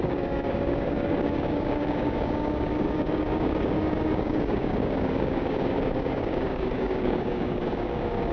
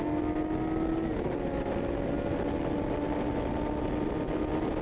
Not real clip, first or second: first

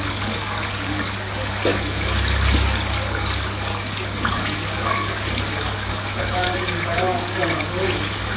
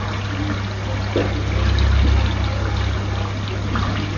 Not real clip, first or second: first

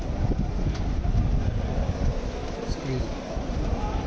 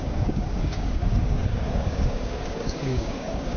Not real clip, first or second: second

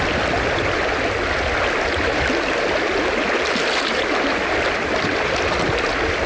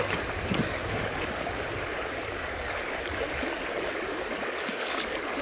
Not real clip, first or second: second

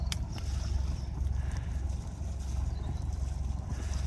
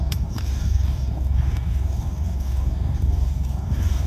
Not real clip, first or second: second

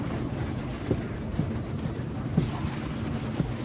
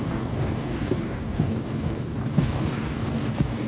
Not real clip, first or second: second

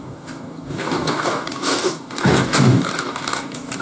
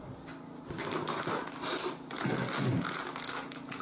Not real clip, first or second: first